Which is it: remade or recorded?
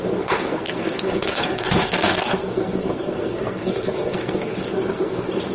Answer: remade